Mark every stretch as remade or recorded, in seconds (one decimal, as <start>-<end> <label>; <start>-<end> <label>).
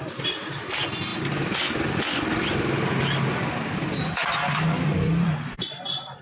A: 0.0-6.2 recorded